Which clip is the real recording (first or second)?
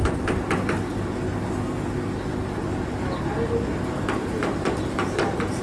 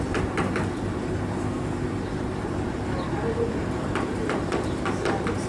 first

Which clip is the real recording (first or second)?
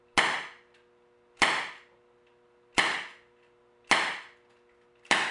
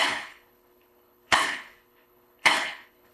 first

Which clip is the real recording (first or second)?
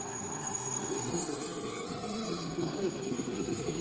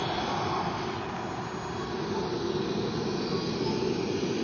second